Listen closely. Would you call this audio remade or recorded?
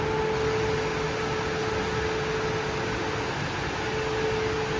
recorded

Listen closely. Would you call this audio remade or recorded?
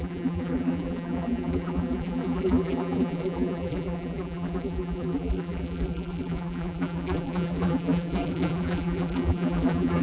remade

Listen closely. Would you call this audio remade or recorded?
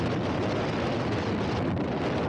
recorded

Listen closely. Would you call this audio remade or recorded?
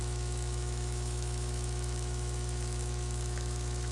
remade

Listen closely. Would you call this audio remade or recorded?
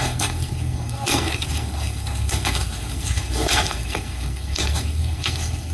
remade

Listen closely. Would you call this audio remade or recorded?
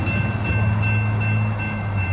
remade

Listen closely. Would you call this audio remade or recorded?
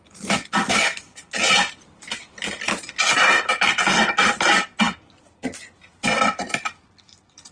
recorded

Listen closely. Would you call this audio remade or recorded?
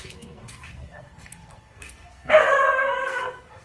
remade